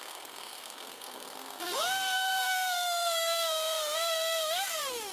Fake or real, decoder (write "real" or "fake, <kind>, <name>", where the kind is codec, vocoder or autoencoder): fake, codec, SNAC